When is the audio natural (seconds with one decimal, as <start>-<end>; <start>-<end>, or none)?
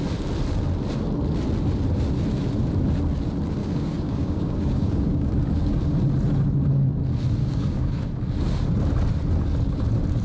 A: 0.0-3.6; 5.3-7.4; 8.1-10.2